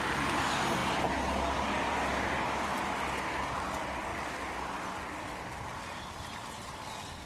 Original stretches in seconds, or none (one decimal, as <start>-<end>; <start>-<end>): 0.0-7.3